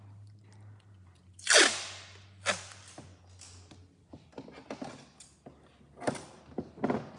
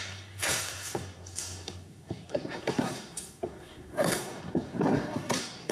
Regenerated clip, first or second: second